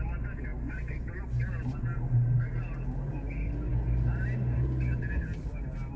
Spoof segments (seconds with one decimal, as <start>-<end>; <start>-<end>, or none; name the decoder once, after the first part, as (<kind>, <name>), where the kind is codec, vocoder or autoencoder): none